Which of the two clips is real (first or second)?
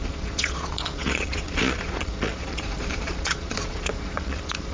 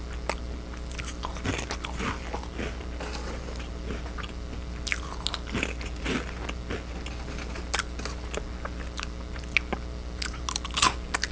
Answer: second